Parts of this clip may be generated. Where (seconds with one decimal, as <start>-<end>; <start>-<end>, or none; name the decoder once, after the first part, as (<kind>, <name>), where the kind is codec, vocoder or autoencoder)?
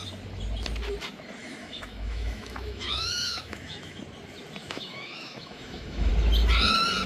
1.4-4.0 (autoencoder, DAC-VAE); 4.6-6.1